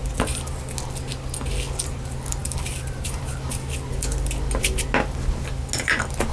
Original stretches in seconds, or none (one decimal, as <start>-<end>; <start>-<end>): 0.0-2.4; 3.3-6.3